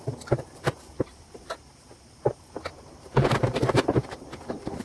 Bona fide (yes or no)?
no